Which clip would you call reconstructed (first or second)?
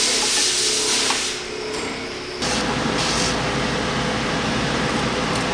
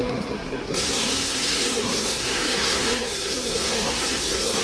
second